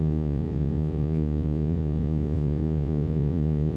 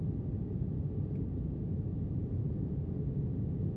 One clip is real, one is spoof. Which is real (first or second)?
second